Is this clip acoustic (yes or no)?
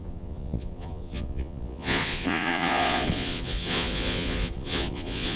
no